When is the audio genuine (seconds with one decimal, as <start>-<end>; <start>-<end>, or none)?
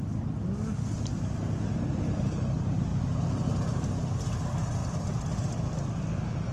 0.0-6.5